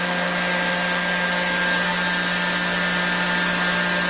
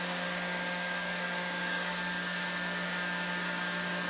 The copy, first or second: second